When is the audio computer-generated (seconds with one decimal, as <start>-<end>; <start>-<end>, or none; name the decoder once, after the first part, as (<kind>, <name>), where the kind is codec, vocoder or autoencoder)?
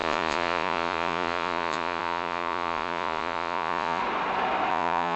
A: 0.0-4.0 (vocoder, Vocos); 4.7-5.2